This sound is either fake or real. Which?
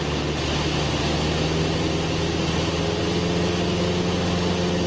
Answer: real